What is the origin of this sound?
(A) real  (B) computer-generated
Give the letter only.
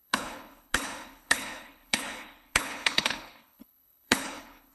B